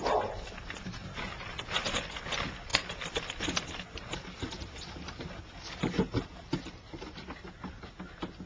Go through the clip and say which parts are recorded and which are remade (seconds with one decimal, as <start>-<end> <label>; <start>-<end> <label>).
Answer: 0.0-8.5 recorded